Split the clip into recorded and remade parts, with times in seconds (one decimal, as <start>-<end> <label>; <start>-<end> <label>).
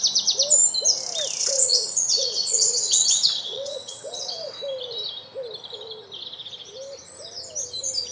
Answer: 0.0-1.4 recorded; 1.4-4.6 remade; 4.6-8.1 recorded